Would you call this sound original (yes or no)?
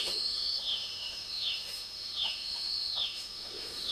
no